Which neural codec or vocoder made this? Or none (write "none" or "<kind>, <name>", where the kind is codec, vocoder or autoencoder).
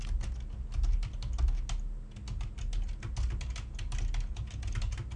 none